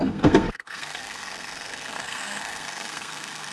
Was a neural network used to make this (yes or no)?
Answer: yes